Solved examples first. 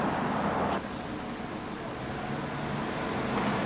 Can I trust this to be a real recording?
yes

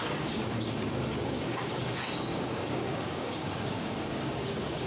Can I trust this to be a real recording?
no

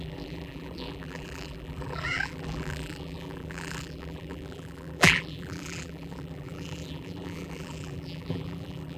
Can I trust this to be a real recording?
no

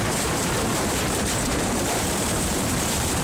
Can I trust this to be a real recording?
no